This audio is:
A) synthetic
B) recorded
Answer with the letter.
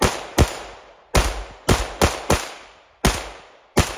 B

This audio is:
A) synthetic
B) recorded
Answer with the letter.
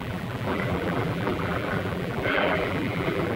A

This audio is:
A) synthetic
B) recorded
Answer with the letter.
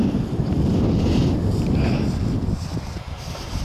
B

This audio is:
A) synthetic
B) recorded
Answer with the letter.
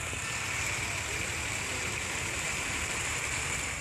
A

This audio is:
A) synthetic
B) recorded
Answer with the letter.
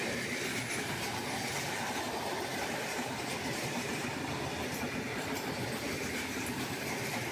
A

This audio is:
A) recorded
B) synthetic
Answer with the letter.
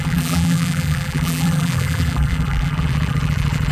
B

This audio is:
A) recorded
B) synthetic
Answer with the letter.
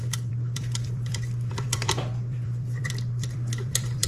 B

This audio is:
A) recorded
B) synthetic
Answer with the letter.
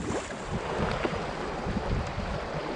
A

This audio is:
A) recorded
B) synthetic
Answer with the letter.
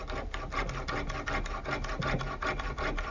A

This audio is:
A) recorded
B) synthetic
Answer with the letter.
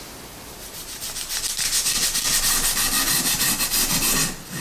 A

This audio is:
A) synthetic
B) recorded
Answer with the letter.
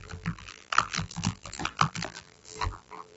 A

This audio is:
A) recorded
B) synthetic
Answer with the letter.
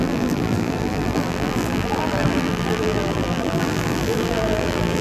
B